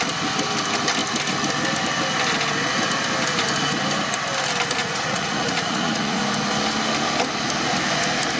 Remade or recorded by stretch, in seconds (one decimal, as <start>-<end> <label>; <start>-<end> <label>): 0.0-4.8 recorded; 4.8-6.2 remade; 6.2-8.4 recorded